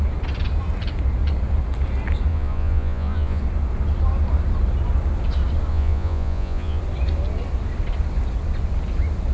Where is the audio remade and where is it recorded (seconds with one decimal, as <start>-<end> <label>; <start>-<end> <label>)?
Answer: 0.0-2.3 recorded; 2.3-3.4 remade; 3.4-5.7 recorded; 5.7-6.8 remade; 6.8-9.3 recorded